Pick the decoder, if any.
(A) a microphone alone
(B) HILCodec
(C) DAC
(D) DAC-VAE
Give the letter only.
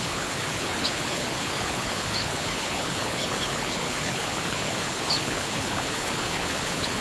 B